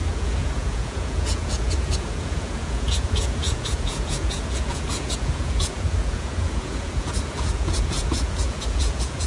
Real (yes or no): no